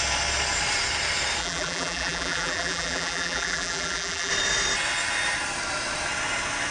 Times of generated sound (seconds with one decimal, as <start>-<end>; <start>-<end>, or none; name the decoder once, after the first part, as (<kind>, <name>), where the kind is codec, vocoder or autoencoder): 1.4-4.3 (vocoder, BigVGAN v2)